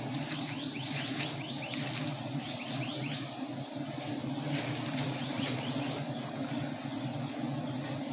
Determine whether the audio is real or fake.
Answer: real